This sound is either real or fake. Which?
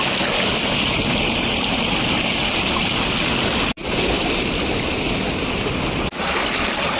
real